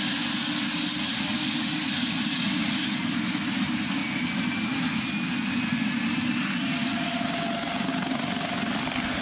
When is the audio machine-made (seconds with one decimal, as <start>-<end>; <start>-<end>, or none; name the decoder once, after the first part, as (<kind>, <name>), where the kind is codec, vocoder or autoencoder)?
none